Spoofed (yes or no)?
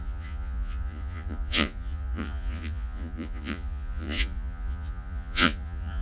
yes